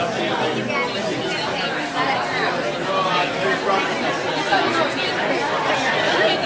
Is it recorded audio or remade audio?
recorded